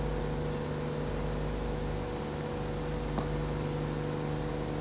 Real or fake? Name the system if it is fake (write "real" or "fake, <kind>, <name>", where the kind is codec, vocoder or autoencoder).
real